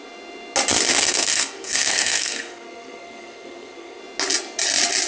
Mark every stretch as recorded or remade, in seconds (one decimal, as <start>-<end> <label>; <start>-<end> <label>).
0.0-0.9 recorded; 0.9-4.0 remade; 4.0-5.1 recorded